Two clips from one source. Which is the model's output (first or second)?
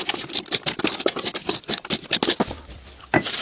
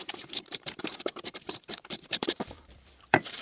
second